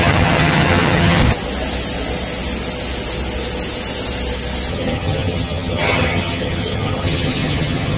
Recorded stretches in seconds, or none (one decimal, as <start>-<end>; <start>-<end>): 1.2-4.7